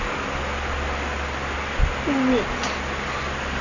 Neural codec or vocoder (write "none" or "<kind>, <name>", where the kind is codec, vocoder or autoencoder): none